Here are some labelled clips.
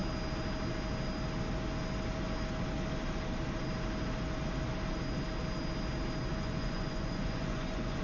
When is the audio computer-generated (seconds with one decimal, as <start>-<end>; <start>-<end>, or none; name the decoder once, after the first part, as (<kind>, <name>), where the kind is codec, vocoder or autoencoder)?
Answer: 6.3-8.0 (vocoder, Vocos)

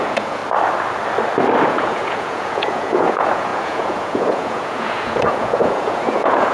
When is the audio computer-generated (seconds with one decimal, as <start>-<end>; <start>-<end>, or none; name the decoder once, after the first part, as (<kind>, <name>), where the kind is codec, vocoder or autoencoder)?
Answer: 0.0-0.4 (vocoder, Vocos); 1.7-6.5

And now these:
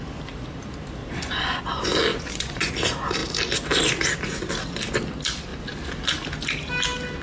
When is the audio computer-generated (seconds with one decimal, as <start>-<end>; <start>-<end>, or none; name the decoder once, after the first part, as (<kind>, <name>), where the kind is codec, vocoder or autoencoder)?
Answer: 1.0-1.6 (vocoder, Vocos); 2.1-2.7